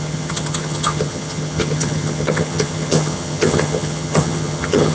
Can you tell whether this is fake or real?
fake